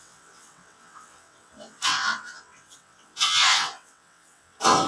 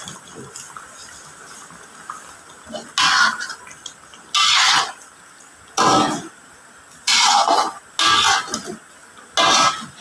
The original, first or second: second